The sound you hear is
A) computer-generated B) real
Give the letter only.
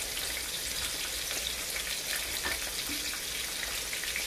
B